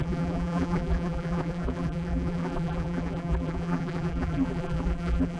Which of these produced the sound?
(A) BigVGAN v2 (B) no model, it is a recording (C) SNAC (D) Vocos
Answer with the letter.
A